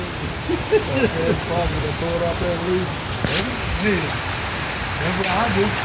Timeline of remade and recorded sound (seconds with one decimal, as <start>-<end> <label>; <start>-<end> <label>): 0.0-5.8 recorded